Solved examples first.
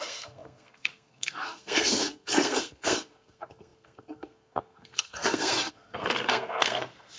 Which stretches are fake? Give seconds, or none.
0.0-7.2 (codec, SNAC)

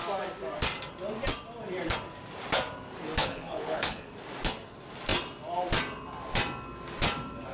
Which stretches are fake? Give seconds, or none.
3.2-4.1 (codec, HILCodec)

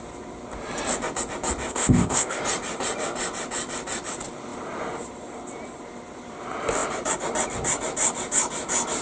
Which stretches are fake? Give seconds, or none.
1.7-2.4 (codec, ZipCodec)

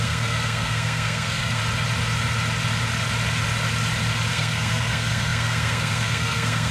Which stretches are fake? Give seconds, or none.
0.0-1.6 (codec, SNAC); 4.3-6.7

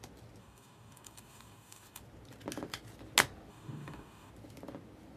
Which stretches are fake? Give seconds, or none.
0.4-2.0 (codec, DAC); 3.5-4.3

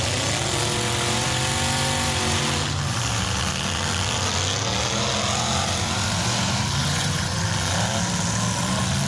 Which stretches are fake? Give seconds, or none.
6.8-7.4 (vocoder, Vocos)

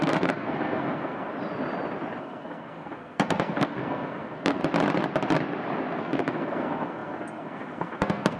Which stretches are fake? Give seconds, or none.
0.0-1.3 (codec, SNAC); 2.2-4.6; 6.0-8.4

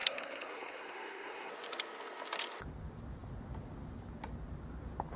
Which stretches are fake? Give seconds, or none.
0.0-1.5 (codec, SNAC)